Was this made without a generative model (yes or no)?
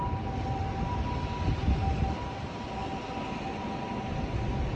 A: yes